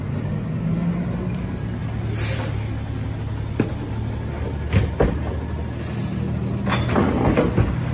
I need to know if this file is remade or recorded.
recorded